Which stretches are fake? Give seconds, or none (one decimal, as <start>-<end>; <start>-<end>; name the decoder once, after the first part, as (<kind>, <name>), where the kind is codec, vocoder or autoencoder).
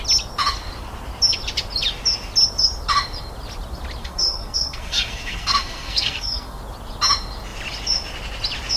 4.0-6.6 (codec, SNAC)